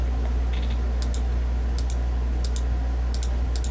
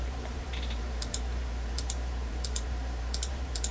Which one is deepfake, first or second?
second